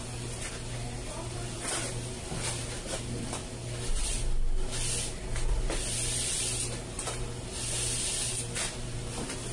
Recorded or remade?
recorded